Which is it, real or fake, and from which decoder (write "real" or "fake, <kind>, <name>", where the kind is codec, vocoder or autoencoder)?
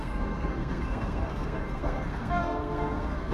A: fake, codec, SNAC